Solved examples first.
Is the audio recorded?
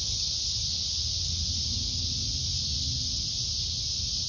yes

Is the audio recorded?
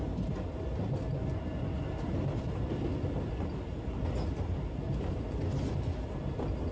yes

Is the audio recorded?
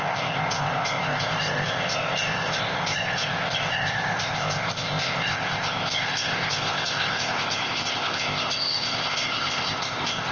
no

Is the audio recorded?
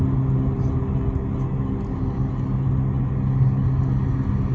yes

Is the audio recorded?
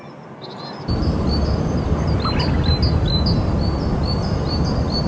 yes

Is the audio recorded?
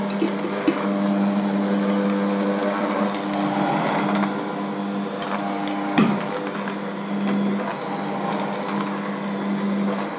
yes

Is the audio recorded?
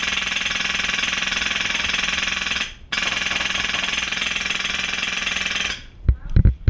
yes